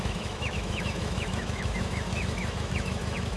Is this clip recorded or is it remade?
remade